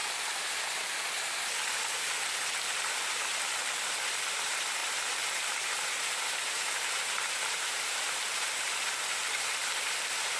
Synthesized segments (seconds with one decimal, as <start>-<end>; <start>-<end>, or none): 4.2-4.8; 5.4-10.4